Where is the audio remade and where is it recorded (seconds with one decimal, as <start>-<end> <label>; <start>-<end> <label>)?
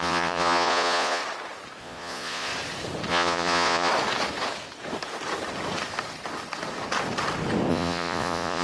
0.0-1.2 remade; 1.2-1.8 recorded; 1.8-2.5 remade; 2.5-3.1 recorded; 3.1-3.9 remade; 3.9-7.7 recorded; 7.7-8.6 remade